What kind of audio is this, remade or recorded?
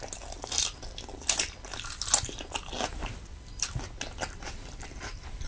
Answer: recorded